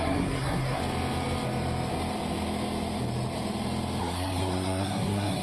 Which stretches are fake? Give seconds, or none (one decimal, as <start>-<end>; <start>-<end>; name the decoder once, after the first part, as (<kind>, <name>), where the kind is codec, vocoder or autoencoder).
0.0-0.8 (codec, SNAC); 4.0-5.4